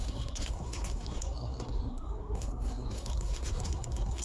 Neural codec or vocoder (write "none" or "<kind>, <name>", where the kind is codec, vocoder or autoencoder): codec, SNAC